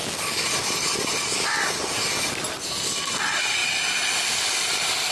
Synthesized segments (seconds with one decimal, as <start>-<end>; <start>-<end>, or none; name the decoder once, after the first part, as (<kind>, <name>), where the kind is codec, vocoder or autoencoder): none